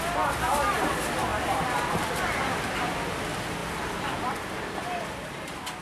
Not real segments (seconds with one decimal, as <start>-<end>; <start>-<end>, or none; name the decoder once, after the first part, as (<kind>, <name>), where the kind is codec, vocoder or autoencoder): none